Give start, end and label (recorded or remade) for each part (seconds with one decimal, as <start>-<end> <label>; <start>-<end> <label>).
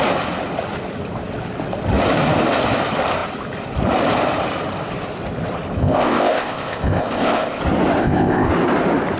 0.0-5.8 recorded; 5.8-7.6 remade; 7.6-8.0 recorded; 8.0-8.5 remade; 8.5-9.2 recorded